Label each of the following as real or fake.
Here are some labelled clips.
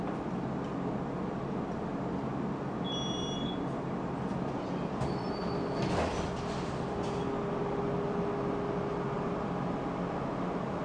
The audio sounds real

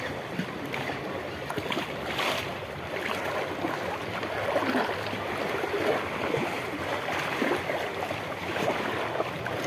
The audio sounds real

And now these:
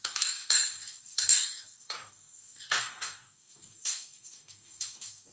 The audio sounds fake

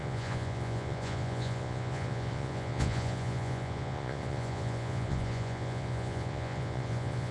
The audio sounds fake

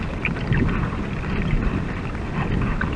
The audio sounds real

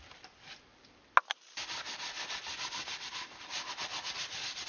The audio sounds real